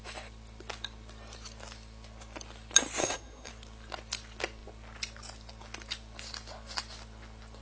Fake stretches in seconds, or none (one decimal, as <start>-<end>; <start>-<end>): 3.0-3.5